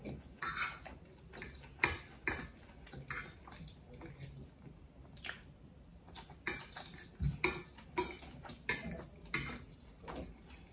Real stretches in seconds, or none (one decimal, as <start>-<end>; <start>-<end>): 0.0-10.7